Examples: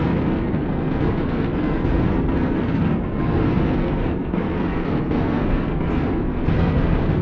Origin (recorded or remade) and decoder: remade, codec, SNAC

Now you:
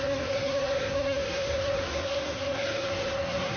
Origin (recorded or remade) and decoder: remade, codec, SNAC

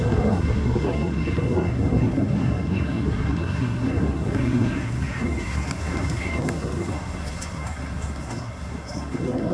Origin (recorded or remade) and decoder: remade, codec, SNAC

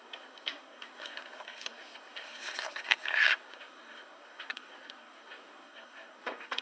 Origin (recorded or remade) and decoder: remade, codec, SNAC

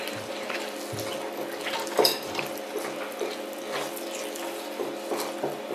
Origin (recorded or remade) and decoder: recorded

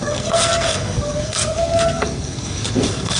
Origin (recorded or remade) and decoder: remade, codec, SNAC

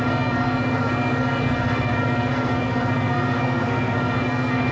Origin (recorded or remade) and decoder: remade, codec, SNAC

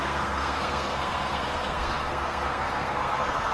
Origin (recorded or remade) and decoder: remade, codec, SNAC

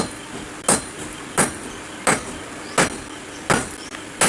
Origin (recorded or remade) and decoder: recorded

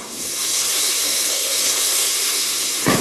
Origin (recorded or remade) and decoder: remade, codec, SNAC